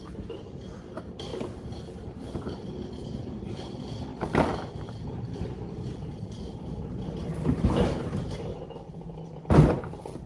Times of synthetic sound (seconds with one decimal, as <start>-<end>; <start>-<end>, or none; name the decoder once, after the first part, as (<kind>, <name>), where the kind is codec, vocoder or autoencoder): 0.0-8.5 (vocoder, BigVGAN v2); 9.7-10.3